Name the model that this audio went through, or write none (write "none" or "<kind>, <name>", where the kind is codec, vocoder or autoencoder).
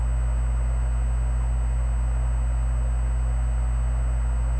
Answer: none